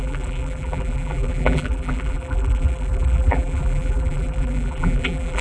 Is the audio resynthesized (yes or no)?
yes